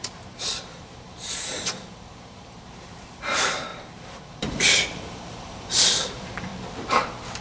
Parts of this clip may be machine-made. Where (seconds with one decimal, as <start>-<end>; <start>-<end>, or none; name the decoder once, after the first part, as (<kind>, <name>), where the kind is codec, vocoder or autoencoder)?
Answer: 0.0-6.5 (vocoder, BigVGAN v2)